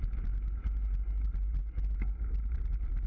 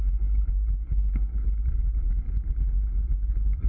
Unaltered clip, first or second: first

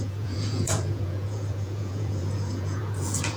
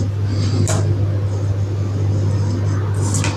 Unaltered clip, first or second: second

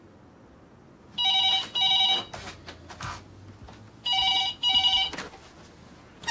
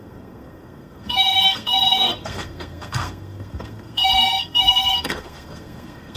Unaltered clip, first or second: first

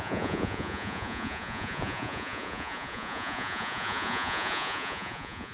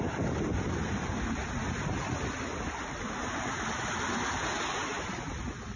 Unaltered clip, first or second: second